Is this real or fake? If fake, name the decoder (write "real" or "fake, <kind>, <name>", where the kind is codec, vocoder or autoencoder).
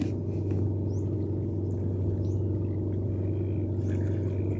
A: real